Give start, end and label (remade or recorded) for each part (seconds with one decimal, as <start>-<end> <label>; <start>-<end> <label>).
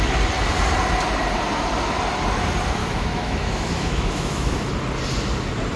0.0-2.8 recorded; 2.8-4.7 remade; 4.7-5.8 recorded